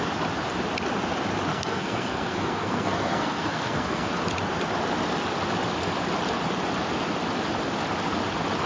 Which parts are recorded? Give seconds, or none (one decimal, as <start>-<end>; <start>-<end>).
0.0-1.5; 4.1-8.7